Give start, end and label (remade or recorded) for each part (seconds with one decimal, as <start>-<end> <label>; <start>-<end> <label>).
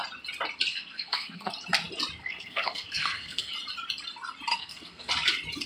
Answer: 0.0-0.7 recorded; 0.7-1.5 remade; 1.5-2.2 recorded; 2.2-3.5 remade; 3.5-4.5 recorded; 4.5-5.1 remade; 5.1-5.7 recorded